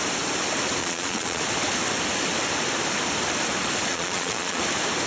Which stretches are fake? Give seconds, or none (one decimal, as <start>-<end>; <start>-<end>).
0.8-1.4; 3.9-4.6